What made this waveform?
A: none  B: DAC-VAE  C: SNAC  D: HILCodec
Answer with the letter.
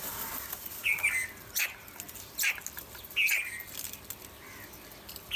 A